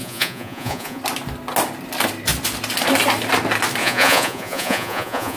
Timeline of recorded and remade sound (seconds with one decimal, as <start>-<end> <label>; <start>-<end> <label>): 0.0-1.0 remade; 1.0-3.8 recorded; 3.8-5.4 remade